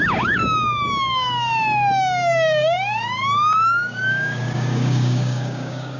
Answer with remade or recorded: remade